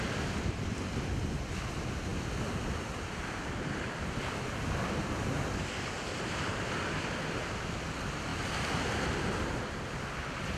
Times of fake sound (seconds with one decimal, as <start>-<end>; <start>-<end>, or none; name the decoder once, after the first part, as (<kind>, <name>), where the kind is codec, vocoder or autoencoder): none